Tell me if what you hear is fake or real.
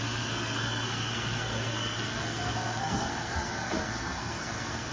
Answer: fake